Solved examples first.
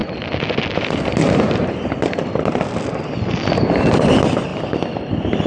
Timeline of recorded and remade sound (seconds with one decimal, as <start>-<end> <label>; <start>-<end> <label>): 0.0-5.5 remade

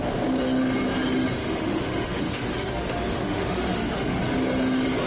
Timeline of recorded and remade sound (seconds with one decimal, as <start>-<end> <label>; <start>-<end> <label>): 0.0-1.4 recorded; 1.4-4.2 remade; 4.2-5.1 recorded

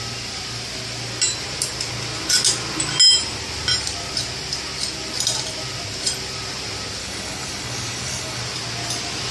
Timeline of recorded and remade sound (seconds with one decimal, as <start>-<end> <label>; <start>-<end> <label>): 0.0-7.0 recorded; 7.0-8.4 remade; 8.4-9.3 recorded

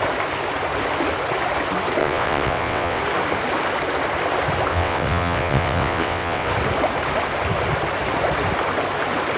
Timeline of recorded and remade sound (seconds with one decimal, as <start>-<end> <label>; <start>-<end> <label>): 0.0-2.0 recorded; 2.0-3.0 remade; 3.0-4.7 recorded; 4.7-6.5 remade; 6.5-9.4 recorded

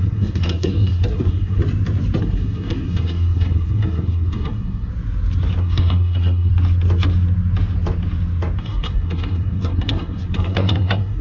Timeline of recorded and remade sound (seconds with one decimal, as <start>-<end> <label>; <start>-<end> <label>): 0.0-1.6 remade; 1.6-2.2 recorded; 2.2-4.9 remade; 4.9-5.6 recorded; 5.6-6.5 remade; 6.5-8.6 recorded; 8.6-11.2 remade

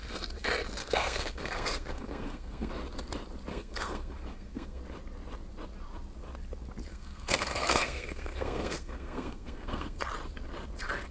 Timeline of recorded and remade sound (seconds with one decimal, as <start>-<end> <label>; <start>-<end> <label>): 0.0-0.8 recorded; 0.8-2.7 remade; 2.7-3.5 recorded; 3.5-4.8 remade; 4.8-6.9 recorded; 6.9-10.0 remade; 10.0-11.1 recorded

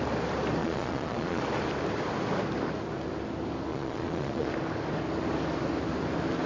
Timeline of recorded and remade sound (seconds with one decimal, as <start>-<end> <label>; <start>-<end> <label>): 0.0-0.6 recorded; 0.6-1.4 remade; 1.4-3.7 recorded; 3.7-4.5 remade; 4.5-6.5 recorded